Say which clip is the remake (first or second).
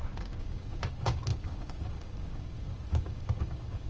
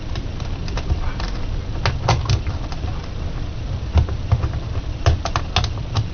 first